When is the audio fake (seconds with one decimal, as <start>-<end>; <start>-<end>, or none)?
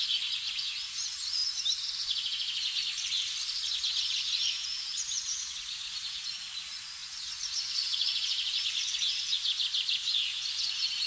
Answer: 0.0-1.4; 2.0-3.3; 3.8-11.1